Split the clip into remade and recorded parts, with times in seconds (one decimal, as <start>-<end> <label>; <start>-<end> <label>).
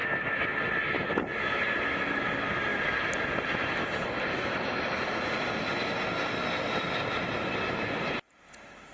0.0-8.9 recorded